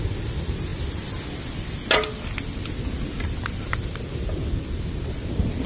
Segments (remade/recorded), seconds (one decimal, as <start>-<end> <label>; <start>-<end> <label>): 0.0-5.7 recorded